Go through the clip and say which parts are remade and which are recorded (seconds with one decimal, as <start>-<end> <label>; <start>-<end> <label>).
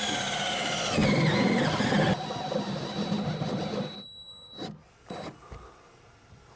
0.0-6.6 recorded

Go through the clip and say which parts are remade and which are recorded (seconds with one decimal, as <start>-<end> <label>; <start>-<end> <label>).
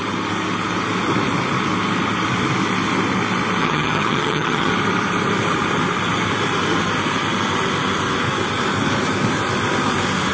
0.0-3.6 recorded; 3.6-4.7 remade; 4.7-10.3 recorded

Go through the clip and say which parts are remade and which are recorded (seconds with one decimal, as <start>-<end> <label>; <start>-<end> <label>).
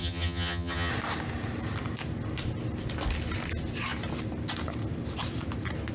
0.0-0.9 remade; 0.9-5.9 recorded